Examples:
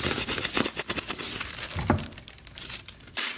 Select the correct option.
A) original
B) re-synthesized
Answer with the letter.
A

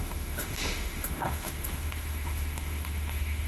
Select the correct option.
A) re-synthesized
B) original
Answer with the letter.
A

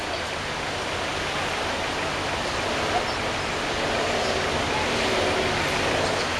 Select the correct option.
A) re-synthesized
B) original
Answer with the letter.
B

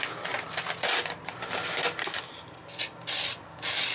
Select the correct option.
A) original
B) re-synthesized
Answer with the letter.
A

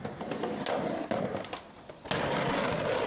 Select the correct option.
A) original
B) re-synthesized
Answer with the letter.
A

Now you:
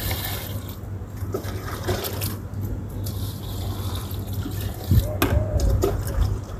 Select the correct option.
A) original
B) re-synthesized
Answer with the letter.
A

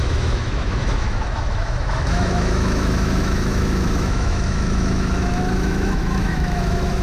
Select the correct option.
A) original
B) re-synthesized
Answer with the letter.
B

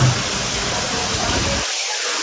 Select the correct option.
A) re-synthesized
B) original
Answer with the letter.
B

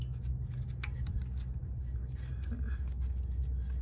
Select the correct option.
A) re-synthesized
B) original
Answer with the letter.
B